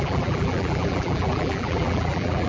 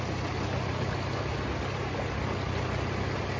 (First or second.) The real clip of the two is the second